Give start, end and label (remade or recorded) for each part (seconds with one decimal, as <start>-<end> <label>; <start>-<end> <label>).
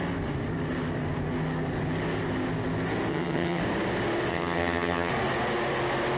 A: 0.0-3.1 recorded; 3.1-3.6 remade; 3.6-4.3 recorded; 4.3-5.1 remade; 5.1-6.2 recorded